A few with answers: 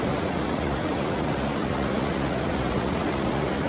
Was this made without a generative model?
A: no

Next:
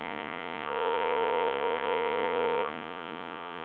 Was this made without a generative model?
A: no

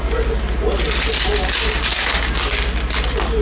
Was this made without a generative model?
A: yes